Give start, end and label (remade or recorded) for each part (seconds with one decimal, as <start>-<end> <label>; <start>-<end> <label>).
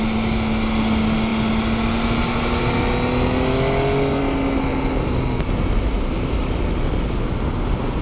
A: 0.0-8.0 recorded